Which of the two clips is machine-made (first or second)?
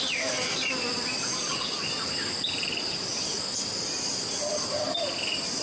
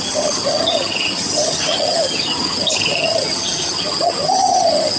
second